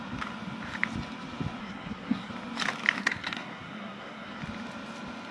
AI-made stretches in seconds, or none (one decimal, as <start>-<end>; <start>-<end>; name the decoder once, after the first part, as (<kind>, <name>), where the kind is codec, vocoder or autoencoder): 1.6-2.3 (codec, SNAC); 3.0-4.4